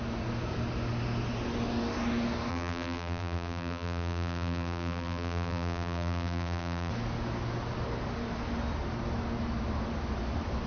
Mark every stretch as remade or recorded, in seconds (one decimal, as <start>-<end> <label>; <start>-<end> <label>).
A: 0.0-2.5 recorded; 2.5-6.9 remade; 6.9-10.7 recorded